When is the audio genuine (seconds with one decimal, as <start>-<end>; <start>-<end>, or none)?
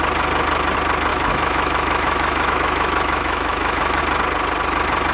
0.0-1.1; 4.0-5.1